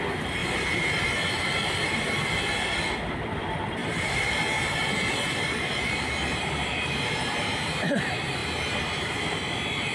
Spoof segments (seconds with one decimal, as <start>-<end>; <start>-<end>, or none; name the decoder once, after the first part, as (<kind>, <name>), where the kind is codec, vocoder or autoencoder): 0.4-1.1 (vocoder, BigVGAN v2); 3.8-8.0; 8.4-9.2